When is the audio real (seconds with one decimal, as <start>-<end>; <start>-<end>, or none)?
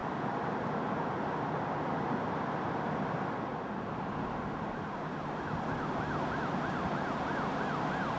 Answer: 0.0-8.2